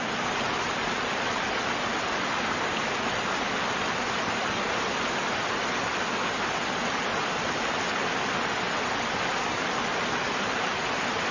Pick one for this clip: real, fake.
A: real